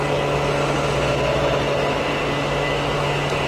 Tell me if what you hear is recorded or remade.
recorded